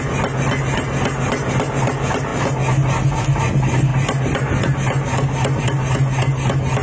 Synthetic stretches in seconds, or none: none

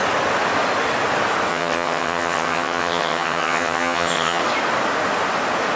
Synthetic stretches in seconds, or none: 1.5-4.4 (vocoder, HiFi-GAN)

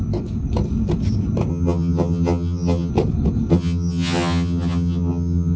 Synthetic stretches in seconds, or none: 1.5-2.9 (vocoder, HiFi-GAN); 3.5-5.6

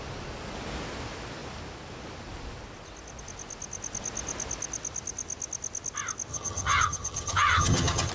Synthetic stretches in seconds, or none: 6.3-8.1 (vocoder, HiFi-GAN)

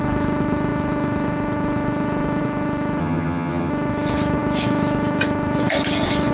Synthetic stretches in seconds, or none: 3.0-3.7 (vocoder, HiFi-GAN)

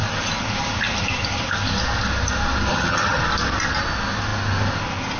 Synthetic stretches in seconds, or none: 2.7-3.2 (vocoder, HiFi-GAN)